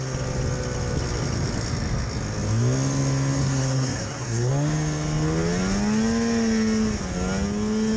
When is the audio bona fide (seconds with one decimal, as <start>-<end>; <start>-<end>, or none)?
0.0-3.4; 4.5-8.0